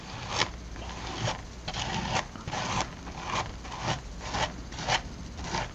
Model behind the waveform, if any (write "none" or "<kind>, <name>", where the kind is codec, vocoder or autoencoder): none